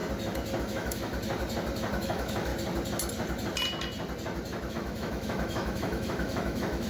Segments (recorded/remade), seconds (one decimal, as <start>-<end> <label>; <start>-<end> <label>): 0.0-0.6 recorded; 0.6-1.1 remade; 1.1-2.0 recorded; 2.0-2.5 remade; 2.5-4.7 recorded; 4.7-6.9 remade